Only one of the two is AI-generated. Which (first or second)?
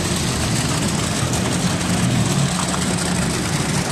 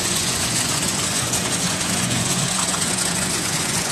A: second